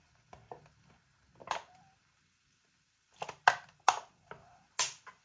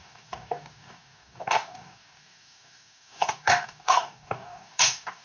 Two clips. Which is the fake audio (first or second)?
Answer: second